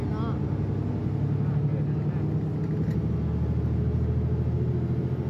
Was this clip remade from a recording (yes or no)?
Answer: no